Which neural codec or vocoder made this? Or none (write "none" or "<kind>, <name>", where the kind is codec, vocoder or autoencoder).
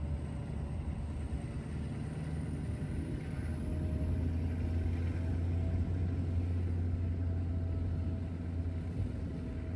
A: none